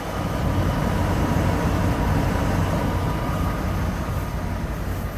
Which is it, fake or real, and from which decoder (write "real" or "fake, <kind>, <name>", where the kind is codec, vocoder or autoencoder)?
real